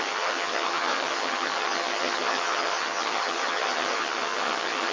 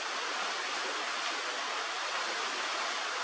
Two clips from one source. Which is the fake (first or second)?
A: first